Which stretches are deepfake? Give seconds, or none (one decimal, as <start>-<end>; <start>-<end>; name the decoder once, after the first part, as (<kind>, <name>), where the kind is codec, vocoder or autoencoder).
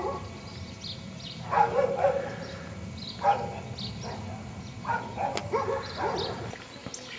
5.4-6.4 (vocoder, BigVGAN v2)